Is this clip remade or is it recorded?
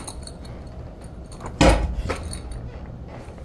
recorded